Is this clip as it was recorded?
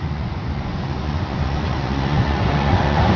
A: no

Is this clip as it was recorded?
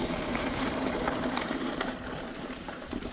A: no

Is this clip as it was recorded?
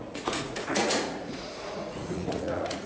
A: no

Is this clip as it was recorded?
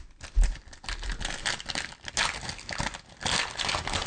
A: yes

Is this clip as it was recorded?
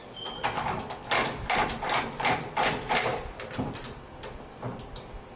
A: yes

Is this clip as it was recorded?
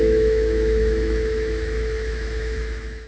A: no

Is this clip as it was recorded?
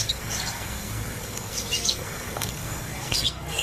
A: no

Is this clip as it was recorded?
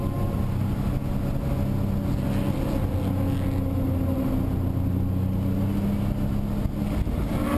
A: yes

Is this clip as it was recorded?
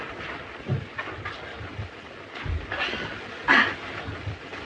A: yes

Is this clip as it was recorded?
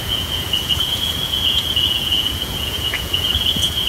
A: no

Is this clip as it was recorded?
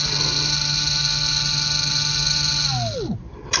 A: yes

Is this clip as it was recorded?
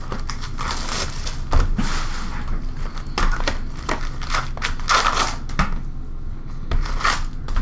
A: yes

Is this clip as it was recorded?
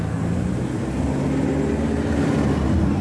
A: yes